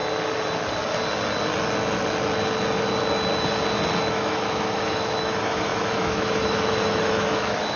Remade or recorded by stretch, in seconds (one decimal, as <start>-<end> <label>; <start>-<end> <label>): 0.0-4.1 recorded; 4.1-7.8 remade